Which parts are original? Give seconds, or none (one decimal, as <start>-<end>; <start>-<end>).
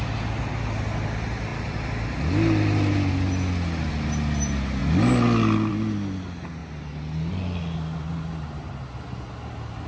0.0-9.9